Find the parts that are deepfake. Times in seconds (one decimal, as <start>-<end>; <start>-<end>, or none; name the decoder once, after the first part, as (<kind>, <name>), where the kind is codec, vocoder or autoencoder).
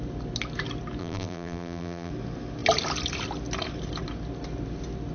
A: 1.0-2.1 (vocoder, BigVGAN v2)